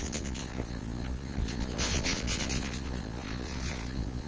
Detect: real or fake fake